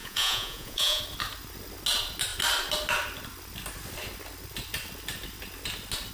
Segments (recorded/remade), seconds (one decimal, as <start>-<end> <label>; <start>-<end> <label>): 0.0-1.0 remade; 1.0-6.1 recorded